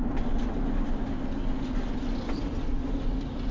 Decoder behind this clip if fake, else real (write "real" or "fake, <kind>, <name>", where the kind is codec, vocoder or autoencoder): real